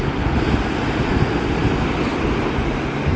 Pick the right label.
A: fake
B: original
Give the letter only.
B